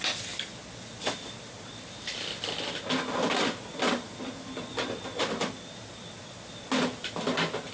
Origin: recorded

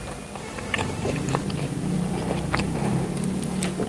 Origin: remade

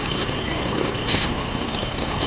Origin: remade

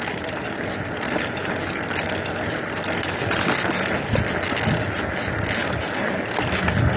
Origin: recorded